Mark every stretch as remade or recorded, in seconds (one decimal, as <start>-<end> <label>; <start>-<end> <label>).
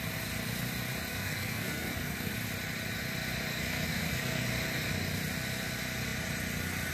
0.0-1.1 recorded; 1.1-2.3 remade; 2.3-3.5 recorded; 3.5-4.4 remade; 4.4-6.9 recorded